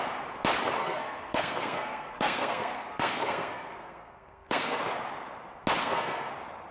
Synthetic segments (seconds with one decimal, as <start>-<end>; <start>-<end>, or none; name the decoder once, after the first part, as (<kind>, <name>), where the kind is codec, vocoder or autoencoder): 0.8-4.8 (codec, SNAC); 5.8-6.3

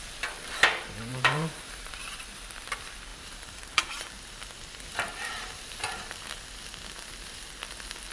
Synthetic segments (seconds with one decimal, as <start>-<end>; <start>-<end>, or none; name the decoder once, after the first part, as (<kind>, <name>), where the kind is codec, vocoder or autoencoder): 1.1-1.9 (vocoder, BigVGAN v2); 3.1-4.0; 4.9-6.4

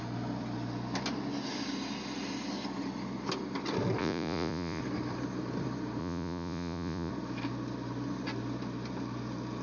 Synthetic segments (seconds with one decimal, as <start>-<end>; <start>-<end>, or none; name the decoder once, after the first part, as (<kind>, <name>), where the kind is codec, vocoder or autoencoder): 4.0-4.8 (vocoder, Vocos); 6.0-7.1

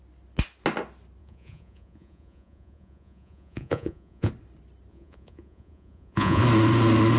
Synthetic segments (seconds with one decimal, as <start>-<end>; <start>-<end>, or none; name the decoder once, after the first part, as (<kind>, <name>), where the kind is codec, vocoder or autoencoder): 1.2-4.3 (vocoder, Vocos); 4.9-6.4

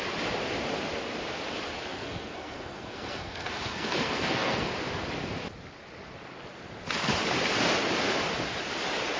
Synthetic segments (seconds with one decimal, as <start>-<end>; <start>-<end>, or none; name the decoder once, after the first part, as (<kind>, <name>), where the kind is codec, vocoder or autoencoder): 1.9-4.7 (codec, SNAC)

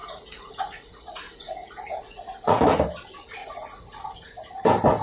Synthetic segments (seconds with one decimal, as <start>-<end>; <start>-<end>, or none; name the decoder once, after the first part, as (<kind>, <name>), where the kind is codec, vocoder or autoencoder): 0.0-2.6 (vocoder, Vocos); 3.4-4.0

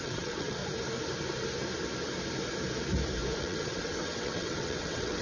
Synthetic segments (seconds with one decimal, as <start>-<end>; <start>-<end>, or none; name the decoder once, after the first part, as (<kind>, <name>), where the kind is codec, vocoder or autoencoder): 0.0-0.6 (vocoder, WaveNeXt); 3.4-5.2

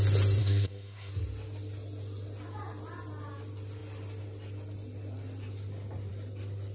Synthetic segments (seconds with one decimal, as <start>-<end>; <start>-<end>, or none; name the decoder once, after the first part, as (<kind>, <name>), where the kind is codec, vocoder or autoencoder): 0.4-1.1 (codec, SNAC)